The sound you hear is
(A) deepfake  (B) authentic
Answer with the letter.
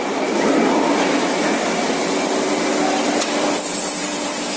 B